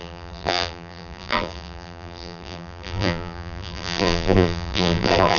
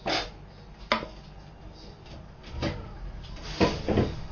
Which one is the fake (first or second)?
first